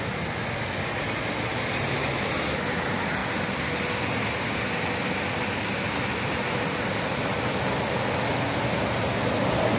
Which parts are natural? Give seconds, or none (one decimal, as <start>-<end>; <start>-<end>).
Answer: 0.0-9.8